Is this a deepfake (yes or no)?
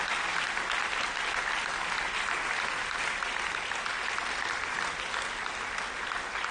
no